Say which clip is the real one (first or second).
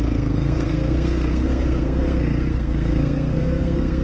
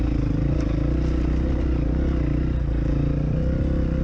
second